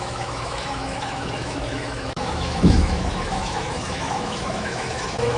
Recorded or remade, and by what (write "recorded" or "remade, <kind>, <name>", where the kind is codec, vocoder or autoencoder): remade, autoencoder, DAC-VAE